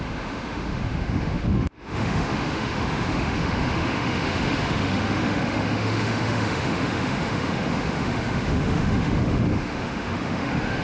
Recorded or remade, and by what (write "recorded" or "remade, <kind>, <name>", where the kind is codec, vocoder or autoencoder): remade, autoencoder, DAC-VAE